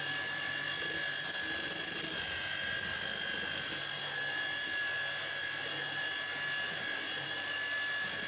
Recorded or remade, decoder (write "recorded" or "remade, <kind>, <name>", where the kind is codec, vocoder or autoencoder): recorded